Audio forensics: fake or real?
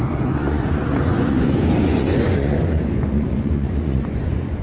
fake